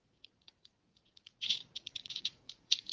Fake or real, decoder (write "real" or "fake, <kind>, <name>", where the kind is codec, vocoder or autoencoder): fake, vocoder, Vocos